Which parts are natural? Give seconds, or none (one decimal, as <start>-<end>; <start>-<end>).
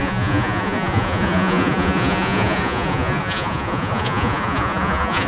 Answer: none